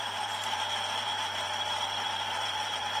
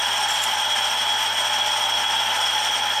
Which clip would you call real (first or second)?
second